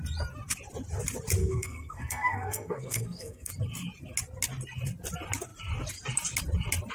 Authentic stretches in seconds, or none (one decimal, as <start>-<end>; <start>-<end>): 0.0-1.4; 3.5-6.9